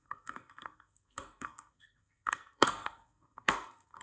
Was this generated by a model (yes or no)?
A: yes